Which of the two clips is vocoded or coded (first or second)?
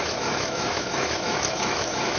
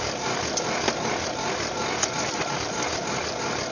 first